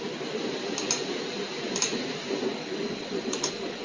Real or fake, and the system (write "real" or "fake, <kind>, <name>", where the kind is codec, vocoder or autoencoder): real